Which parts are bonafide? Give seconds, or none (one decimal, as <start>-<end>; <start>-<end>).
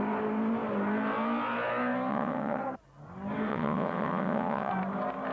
0.0-2.1; 2.6-3.5; 4.7-5.3